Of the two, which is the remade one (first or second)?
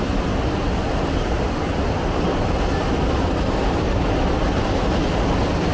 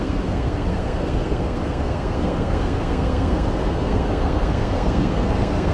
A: second